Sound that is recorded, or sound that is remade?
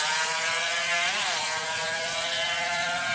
remade